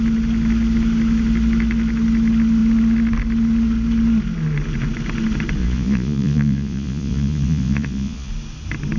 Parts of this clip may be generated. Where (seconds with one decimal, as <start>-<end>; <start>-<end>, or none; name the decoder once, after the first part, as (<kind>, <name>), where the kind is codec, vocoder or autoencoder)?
5.6-8.3 (vocoder, Vocos)